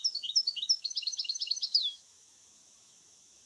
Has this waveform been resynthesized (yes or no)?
yes